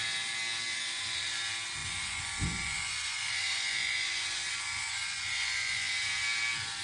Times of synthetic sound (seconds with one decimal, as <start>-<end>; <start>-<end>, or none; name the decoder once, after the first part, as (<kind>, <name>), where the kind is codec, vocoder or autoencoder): 0.7-1.4 (vocoder, Vocos); 1.8-5.9